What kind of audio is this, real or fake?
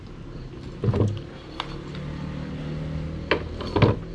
real